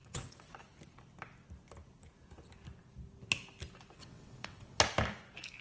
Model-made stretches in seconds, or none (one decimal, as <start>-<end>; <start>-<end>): 0.0-0.5; 4.0-4.8

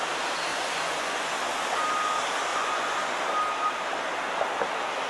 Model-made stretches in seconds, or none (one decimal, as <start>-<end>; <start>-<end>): 0.5-1.3; 2.5-3.2

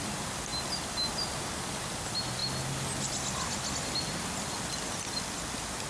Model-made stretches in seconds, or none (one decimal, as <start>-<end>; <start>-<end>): none

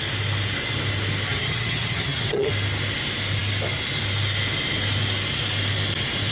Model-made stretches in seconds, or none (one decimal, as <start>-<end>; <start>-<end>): 1.3-2.5

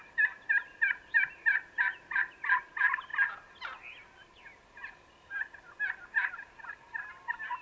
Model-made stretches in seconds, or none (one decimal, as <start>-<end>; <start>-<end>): none

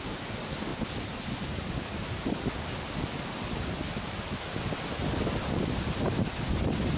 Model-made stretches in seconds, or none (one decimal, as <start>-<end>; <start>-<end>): none

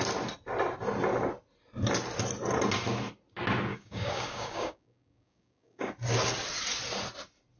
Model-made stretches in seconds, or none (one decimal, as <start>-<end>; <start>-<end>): 3.7-5.9

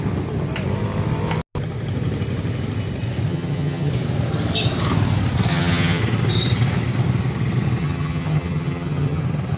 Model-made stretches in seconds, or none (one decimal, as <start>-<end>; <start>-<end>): 3.3-3.9; 5.5-6.0; 7.8-9.2